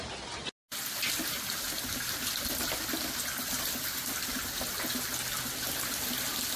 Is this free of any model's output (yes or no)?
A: yes